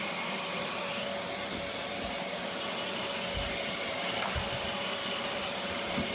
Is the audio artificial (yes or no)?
no